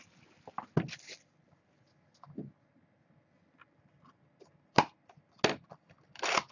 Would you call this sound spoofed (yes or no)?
no